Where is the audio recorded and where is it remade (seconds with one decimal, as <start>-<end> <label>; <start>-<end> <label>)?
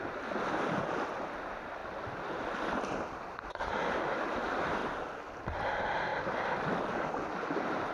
0.0-4.8 recorded; 4.8-5.4 remade; 5.4-7.9 recorded